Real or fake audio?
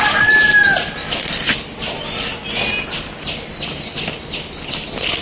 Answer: real